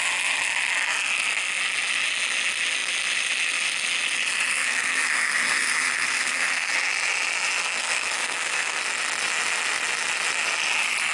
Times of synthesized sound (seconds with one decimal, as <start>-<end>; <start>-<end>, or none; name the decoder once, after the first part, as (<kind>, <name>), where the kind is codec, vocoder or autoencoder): 4.5-6.7 (codec, SNAC); 7.6-8.8